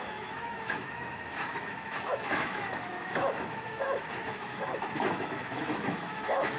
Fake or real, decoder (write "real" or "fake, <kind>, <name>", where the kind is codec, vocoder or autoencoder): fake, autoencoder, DAC-VAE